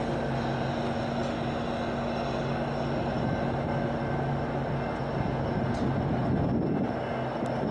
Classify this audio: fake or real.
real